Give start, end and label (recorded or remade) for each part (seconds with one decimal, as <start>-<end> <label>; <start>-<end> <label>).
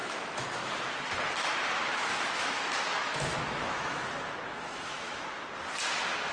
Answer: 0.0-0.7 remade; 0.7-1.9 recorded; 1.9-5.2 remade; 5.2-6.3 recorded